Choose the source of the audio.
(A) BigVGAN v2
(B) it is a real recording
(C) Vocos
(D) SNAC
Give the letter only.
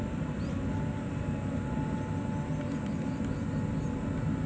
B